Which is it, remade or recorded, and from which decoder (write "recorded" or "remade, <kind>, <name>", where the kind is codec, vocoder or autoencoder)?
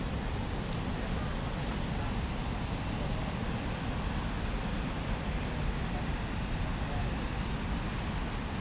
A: recorded